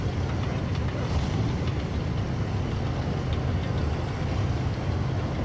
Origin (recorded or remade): recorded